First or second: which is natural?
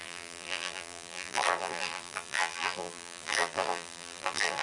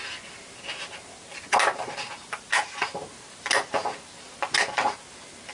second